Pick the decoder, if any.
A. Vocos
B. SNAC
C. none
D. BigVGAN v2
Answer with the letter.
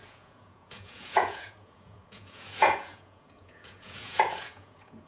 A